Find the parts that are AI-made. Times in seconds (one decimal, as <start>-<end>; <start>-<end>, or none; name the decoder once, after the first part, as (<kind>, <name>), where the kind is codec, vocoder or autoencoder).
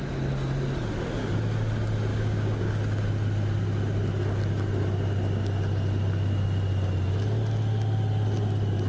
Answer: 2.1-2.7 (codec, DAC)